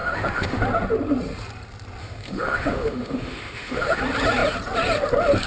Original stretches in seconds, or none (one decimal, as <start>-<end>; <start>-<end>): 0.6-2.0; 4.0-5.5